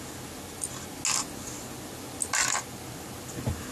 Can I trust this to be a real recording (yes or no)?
yes